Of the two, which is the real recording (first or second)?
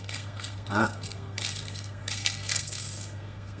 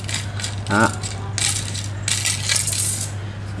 second